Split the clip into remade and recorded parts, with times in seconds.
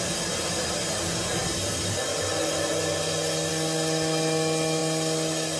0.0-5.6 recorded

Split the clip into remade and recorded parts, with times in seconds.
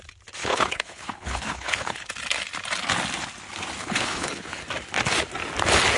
0.0-0.4 recorded; 0.4-2.1 remade; 2.1-3.8 recorded; 3.8-4.6 remade; 4.6-6.0 recorded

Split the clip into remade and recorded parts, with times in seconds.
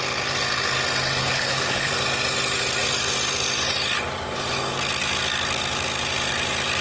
0.0-1.2 recorded; 1.2-1.9 remade; 1.9-6.8 recorded